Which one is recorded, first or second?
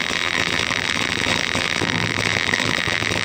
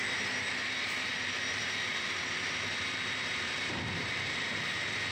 second